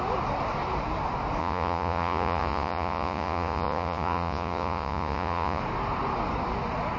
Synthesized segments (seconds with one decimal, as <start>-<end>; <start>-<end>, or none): 1.4-5.6